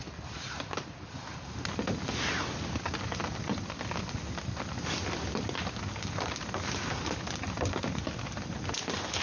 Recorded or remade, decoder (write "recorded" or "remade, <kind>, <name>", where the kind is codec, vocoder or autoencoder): recorded